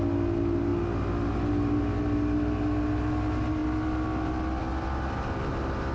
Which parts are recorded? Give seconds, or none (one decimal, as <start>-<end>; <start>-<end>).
0.0-5.9